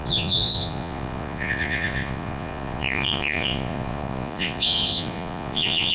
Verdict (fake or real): fake